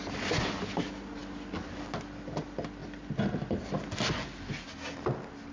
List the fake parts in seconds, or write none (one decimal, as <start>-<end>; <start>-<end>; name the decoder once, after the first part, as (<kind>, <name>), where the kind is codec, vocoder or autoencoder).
none